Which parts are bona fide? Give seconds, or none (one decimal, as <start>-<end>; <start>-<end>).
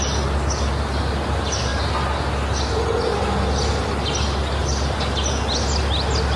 0.0-6.4